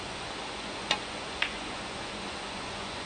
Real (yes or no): no